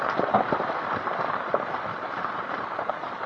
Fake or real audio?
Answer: fake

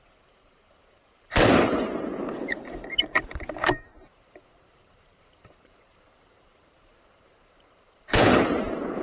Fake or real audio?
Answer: fake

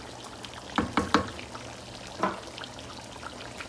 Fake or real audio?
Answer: real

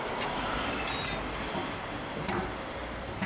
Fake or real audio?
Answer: fake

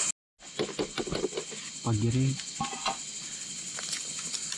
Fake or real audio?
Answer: real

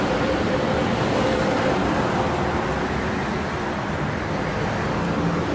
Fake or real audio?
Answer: real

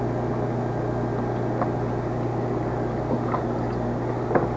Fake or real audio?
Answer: real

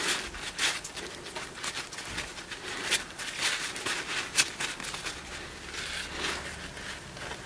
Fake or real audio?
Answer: real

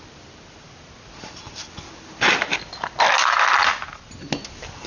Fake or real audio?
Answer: real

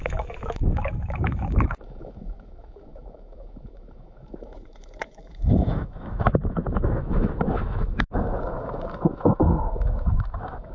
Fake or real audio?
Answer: fake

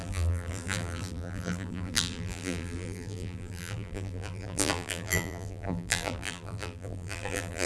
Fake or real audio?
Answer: fake